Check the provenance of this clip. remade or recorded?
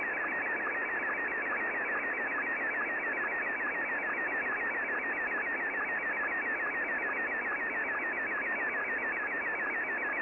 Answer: recorded